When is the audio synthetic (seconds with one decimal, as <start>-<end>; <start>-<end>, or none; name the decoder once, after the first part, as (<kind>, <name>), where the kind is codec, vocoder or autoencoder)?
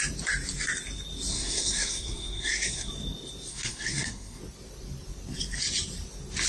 1.3-2.9 (codec, SNAC); 3.5-4.4